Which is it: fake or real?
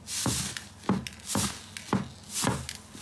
real